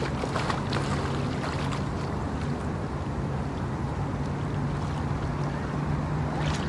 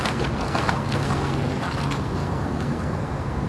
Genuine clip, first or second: first